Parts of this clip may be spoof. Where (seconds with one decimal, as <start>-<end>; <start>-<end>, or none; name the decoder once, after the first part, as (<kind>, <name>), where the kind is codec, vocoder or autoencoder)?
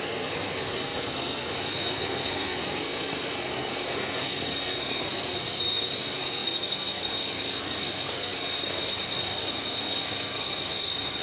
0.0-11.2 (codec, SNAC)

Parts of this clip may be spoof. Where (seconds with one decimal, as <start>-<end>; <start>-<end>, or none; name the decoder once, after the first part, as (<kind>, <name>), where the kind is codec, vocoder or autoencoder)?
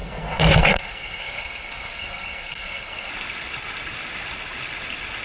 0.0-3.1 (codec, SNAC)